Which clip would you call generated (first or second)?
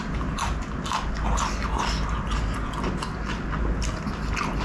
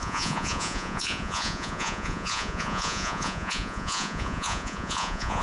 second